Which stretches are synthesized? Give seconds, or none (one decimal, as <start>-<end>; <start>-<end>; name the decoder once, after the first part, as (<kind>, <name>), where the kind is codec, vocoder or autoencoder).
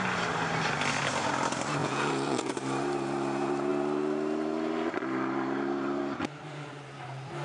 1.8-2.5 (vocoder, Vocos)